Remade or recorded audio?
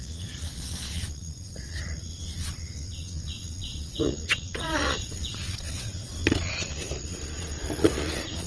remade